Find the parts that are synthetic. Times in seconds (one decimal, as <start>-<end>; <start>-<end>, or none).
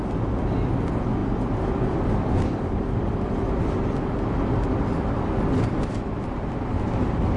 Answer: 1.2-5.4